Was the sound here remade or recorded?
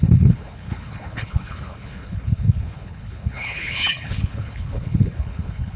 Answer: remade